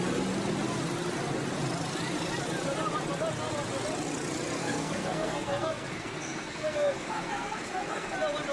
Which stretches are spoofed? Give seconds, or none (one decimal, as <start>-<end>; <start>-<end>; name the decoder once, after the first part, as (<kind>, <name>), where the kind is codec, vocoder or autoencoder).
4.6-8.1 (codec, SNAC)